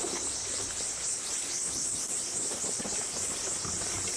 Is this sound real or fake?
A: fake